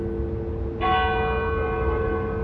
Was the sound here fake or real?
real